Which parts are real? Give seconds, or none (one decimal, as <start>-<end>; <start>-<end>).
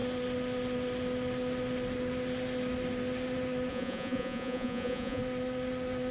0.0-3.7; 5.2-6.1